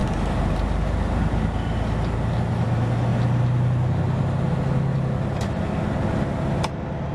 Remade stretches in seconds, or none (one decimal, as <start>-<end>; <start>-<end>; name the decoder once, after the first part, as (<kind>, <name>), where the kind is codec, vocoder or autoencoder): 0.0-1.2 (vocoder, BigVGAN v2); 4.9-5.6